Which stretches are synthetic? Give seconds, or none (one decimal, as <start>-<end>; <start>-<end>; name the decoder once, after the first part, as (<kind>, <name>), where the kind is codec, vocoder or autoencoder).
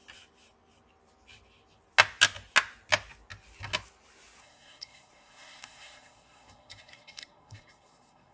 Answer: 4.4-8.3 (codec, SNAC)